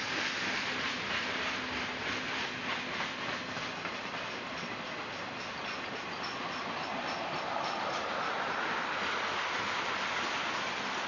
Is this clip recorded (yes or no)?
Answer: yes